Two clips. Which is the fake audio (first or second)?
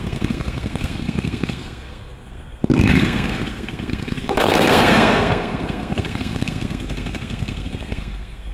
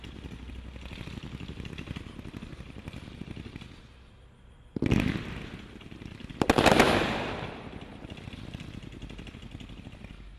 first